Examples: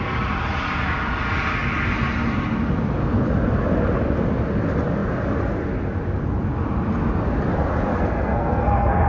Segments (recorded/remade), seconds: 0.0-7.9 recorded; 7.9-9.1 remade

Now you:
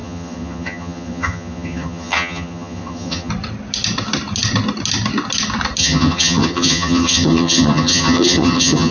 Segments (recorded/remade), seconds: 0.0-3.3 remade; 3.3-5.8 recorded; 5.8-8.9 remade